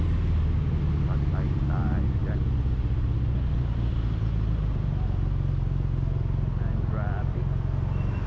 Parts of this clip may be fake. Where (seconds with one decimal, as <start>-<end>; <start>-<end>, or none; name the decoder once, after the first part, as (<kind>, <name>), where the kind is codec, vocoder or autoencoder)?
none